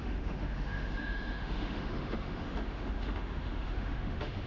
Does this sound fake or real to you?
fake